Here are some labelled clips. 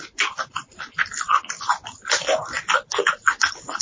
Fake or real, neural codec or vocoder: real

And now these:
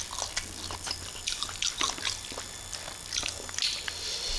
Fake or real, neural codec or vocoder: real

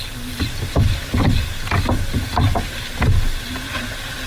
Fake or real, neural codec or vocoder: real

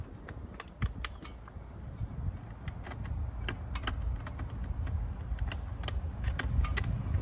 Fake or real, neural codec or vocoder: real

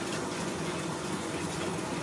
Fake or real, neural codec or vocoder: fake, vocoder, Vocos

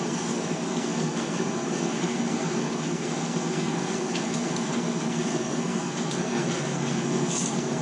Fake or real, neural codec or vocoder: fake, codec, SNAC